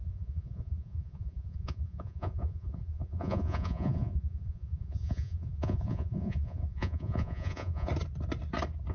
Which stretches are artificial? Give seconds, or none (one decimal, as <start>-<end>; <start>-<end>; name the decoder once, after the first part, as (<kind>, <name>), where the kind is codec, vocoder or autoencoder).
0.0-7.9 (vocoder, Vocos)